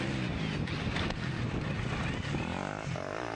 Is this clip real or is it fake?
real